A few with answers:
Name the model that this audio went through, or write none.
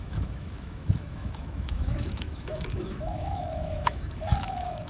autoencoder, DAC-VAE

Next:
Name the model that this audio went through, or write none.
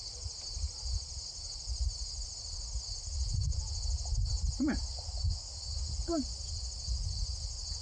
none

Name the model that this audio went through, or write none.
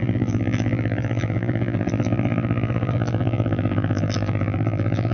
vocoder, BigVGAN v2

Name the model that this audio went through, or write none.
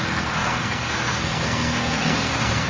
codec, SNAC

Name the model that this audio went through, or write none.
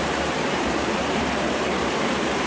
vocoder, BigVGAN v2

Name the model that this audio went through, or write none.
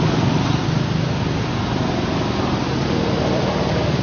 none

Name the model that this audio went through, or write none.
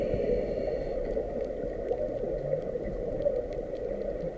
none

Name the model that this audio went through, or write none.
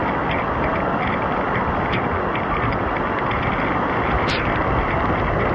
none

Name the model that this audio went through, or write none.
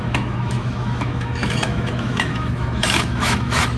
autoencoder, DAC-VAE